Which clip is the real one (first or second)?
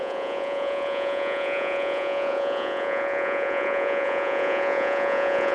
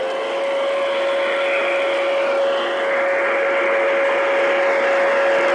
second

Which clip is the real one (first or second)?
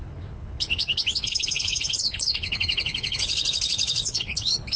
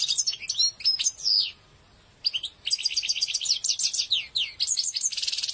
second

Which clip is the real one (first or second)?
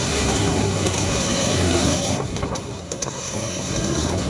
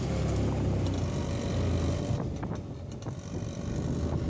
second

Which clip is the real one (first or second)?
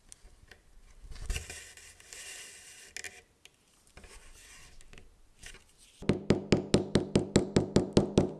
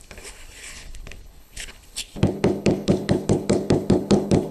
first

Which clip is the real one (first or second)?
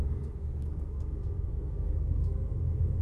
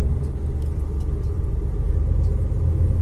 second